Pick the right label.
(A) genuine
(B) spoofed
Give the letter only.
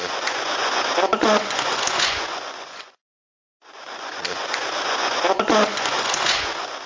B